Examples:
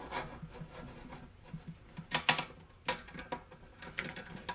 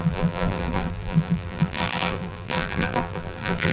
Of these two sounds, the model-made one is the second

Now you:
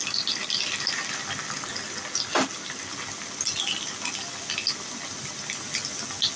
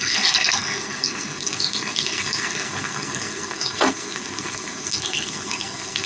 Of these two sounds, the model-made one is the second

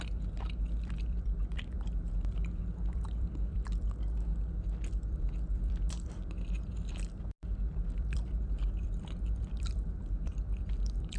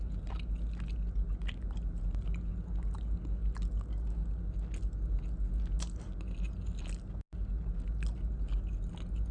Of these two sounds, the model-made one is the first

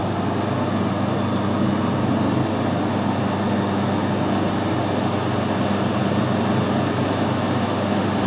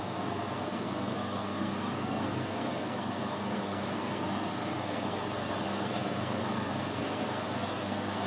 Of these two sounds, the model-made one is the second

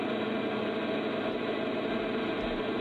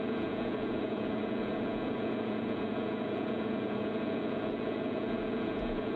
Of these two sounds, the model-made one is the second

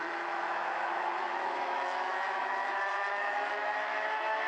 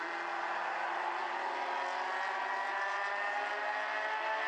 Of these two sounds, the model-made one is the first